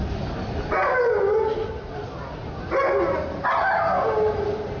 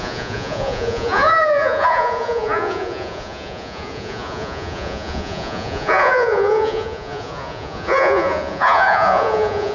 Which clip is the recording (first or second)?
first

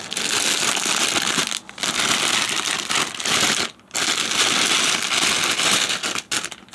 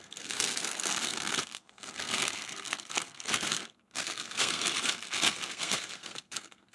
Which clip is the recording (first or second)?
first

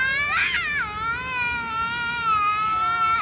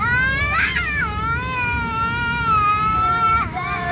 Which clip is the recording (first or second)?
first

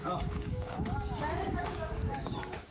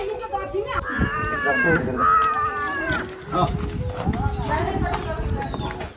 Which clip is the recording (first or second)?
second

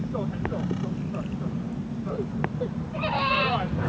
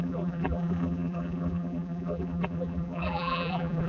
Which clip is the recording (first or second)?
first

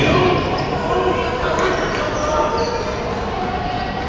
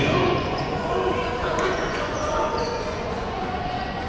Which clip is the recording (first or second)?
first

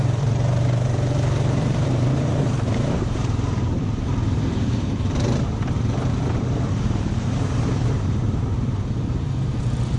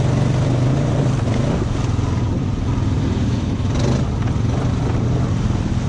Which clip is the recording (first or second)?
second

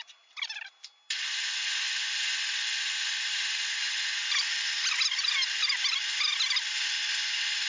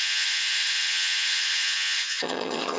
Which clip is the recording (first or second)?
first